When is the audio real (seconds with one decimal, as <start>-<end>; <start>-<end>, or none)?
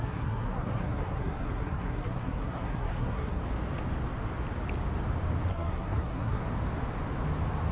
3.4-5.5; 6.4-7.7